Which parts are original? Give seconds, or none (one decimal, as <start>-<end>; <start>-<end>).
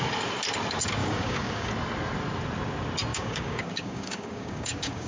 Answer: 0.0-1.0; 1.7-3.1